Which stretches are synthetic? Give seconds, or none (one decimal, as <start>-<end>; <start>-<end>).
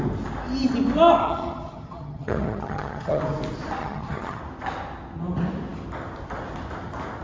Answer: 1.2-3.2; 3.8-4.4